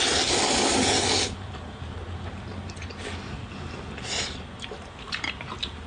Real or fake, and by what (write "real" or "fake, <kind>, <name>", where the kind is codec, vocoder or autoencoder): real